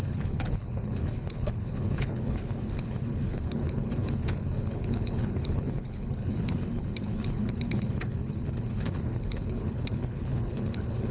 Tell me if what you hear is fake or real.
fake